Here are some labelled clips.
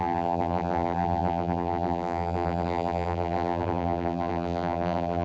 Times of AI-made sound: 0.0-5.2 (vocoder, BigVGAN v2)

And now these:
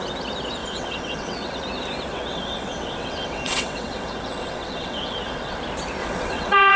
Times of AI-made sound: 0.6-1.6 (vocoder, WaveNeXt); 2.1-5.6; 6.0-6.8

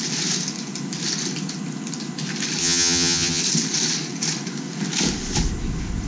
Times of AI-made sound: 2.6-3.4 (vocoder, HiFi-GAN)